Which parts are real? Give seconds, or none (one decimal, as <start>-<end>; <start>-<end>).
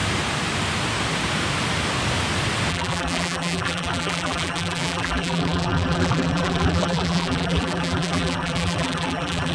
0.0-2.7